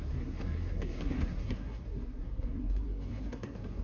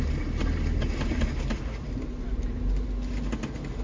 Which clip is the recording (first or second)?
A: second